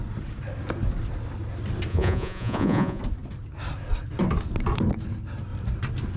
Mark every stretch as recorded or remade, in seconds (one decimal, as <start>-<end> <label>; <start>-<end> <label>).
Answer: 0.0-1.9 recorded; 1.9-3.0 remade; 3.0-6.2 recorded